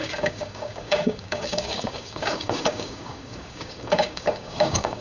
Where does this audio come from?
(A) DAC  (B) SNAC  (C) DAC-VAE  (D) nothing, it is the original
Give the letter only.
A